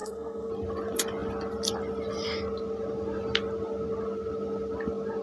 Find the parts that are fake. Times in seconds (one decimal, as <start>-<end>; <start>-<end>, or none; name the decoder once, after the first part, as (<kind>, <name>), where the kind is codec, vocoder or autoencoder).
0.0-0.5 (codec, SNAC)